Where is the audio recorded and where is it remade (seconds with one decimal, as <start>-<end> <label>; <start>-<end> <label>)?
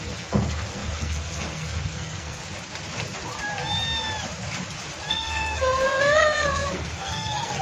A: 0.0-2.4 remade; 2.4-5.1 recorded; 5.1-7.6 remade